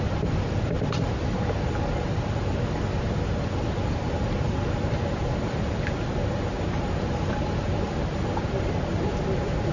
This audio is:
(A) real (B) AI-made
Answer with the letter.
A